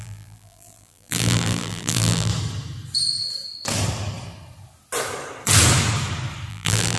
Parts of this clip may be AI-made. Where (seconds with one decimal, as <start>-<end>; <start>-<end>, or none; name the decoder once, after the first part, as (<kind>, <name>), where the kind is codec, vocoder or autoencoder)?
0.0-2.3 (vocoder, BigVGAN v2); 6.5-7.0

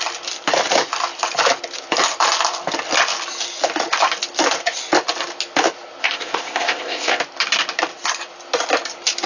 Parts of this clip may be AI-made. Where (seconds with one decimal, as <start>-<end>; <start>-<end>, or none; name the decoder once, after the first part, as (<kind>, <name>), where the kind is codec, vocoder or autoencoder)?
6.0-7.2 (codec, ZipCodec)

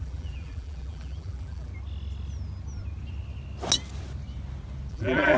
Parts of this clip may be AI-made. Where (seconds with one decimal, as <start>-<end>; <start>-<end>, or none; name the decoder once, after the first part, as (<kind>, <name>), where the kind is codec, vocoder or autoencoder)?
0.0-1.7 (vocoder, BigVGAN v2); 4.9-5.4

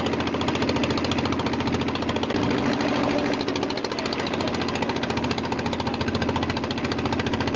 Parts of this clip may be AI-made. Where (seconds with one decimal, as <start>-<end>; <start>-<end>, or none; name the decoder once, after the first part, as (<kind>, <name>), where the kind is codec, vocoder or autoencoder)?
none

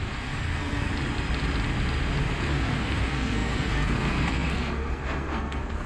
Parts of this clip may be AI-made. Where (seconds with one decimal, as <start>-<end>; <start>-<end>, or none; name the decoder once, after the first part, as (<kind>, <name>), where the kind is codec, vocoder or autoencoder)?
0.0-0.9 (codec, SNAC); 2.4-5.9

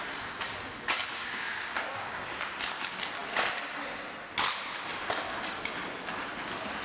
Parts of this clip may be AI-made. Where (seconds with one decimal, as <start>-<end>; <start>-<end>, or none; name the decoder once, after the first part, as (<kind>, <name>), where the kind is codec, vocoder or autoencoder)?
1.1-2.1 (codec, DAC)

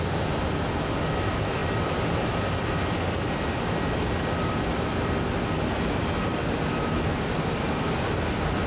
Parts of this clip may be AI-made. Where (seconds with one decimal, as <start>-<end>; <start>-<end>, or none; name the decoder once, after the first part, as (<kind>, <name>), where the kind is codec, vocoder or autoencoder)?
none

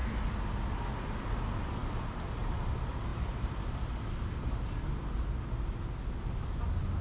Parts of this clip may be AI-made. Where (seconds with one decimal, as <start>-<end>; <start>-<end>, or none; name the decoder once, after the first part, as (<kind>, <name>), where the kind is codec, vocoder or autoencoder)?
3.1-5.2 (vocoder, BigVGAN v2)